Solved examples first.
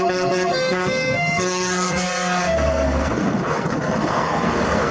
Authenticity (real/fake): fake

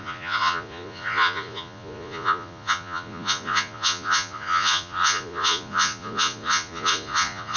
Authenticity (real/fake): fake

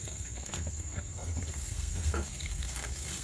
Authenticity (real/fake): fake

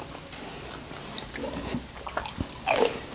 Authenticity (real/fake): real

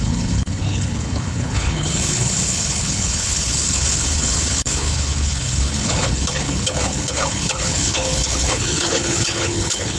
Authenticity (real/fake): fake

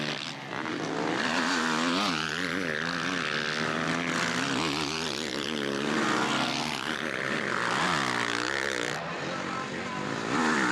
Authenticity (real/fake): real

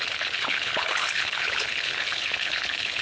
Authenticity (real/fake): fake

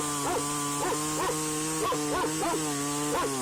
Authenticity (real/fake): real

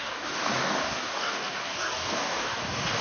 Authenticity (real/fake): fake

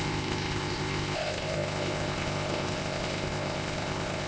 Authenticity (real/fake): fake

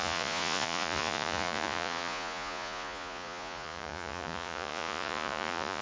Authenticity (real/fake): fake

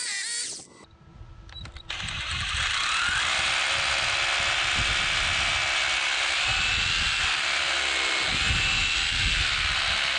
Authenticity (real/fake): real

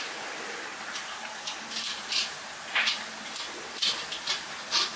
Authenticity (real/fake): real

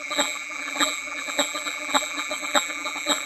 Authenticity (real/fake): fake